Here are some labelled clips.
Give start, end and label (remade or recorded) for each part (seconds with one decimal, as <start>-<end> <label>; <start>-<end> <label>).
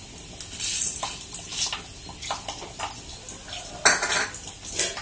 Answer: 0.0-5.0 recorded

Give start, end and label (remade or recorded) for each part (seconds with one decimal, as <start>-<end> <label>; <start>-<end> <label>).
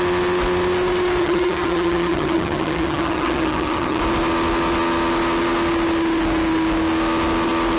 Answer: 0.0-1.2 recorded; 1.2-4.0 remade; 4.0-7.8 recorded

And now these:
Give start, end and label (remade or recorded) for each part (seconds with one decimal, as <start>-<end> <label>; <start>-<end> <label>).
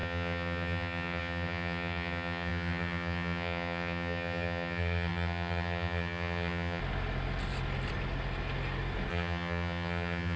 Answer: 0.0-6.8 remade; 6.8-9.1 recorded; 9.1-10.4 remade